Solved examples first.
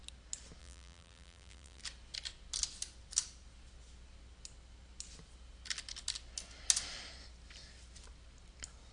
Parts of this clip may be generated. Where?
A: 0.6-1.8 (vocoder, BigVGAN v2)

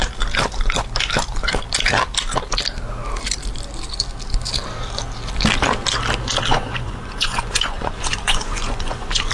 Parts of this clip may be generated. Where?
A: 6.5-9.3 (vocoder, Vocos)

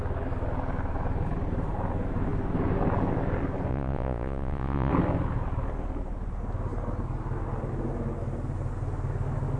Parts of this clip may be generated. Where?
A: 3.7-4.9 (vocoder, Vocos)

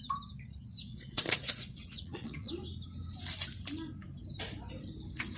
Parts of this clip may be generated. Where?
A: 0.9-2.5 (vocoder, Vocos)